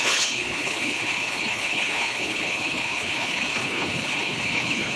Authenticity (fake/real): fake